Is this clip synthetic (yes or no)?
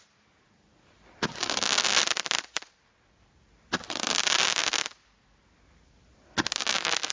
no